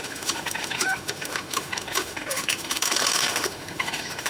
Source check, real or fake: fake